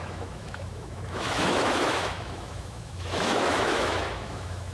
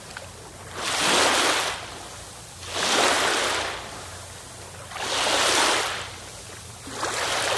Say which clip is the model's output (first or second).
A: first